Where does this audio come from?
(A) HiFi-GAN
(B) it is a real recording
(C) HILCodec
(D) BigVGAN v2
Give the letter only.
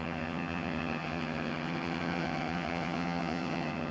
A